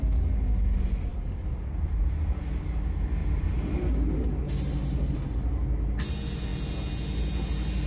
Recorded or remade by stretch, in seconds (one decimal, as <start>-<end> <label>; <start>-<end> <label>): 0.0-7.9 recorded